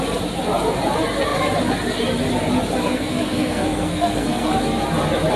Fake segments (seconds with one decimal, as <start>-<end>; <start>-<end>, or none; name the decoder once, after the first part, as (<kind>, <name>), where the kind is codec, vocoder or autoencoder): 2.8-4.5 (codec, SNAC)